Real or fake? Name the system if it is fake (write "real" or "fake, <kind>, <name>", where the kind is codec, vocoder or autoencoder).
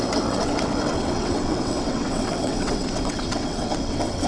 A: fake, vocoder, WaveNeXt